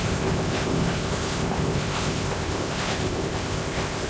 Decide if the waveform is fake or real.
fake